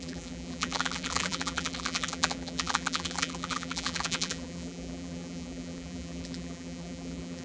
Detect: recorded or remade remade